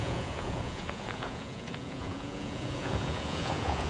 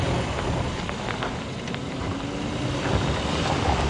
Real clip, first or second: second